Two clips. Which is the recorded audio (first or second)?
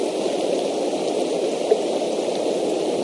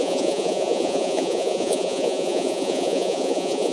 first